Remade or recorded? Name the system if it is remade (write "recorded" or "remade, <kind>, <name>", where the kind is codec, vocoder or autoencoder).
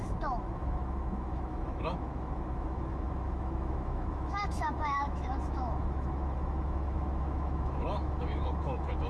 remade, autoencoder, DAC-VAE